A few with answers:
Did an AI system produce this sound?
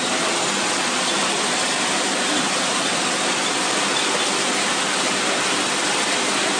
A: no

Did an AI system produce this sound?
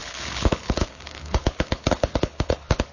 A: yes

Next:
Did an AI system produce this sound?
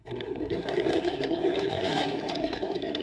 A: yes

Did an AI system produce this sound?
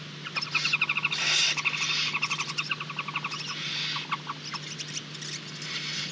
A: no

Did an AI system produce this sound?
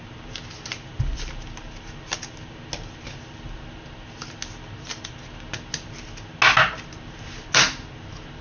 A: no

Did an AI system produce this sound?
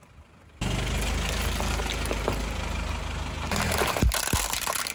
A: no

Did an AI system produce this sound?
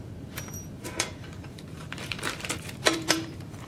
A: yes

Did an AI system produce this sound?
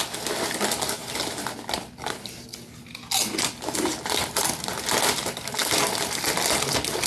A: no